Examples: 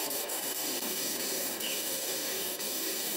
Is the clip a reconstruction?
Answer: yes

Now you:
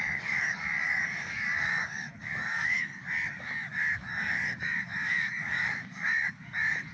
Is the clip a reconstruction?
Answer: yes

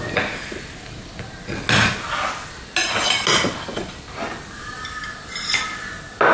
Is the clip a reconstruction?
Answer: no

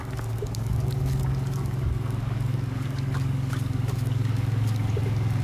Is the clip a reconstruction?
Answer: yes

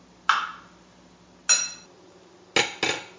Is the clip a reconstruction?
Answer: no